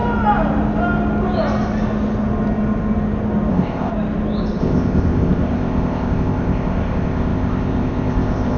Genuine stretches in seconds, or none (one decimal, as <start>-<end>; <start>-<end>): 0.0-3.5; 3.9-4.6